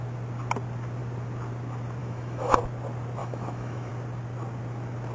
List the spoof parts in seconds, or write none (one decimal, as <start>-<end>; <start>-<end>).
2.0-2.6; 3.2-3.9